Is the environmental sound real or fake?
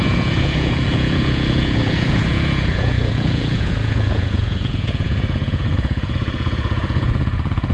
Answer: fake